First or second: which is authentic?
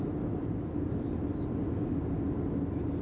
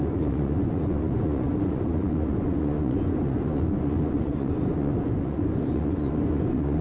first